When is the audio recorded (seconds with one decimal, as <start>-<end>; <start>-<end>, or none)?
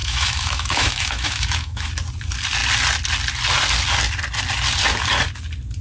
1.9-5.8